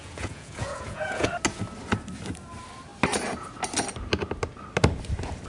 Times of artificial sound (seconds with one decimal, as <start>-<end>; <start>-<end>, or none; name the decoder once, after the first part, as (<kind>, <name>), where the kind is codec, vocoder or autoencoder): 0.0-1.3 (vocoder, Vocos)